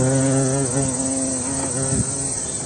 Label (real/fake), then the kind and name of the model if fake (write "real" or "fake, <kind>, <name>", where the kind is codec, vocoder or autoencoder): real